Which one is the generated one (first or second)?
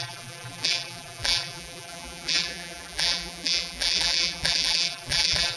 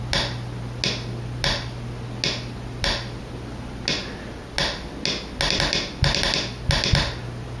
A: first